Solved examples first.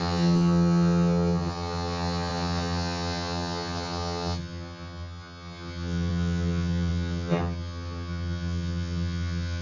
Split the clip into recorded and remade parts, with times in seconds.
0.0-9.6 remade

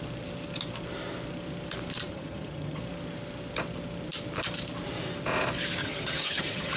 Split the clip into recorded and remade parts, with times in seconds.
0.0-2.1 recorded; 2.1-2.8 remade; 2.8-5.8 recorded; 5.8-6.8 remade

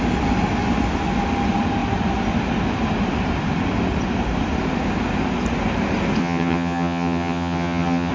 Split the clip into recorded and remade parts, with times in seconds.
0.0-6.2 recorded; 6.2-8.1 remade